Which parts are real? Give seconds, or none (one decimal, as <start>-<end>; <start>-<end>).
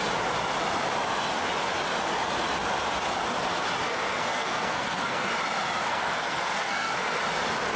0.0-3.9; 5.3-5.8; 7.2-7.8